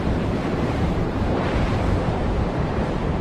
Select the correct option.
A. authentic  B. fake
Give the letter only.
B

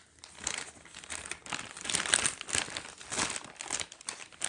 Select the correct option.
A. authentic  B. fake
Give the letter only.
A